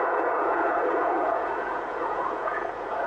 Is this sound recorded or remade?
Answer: remade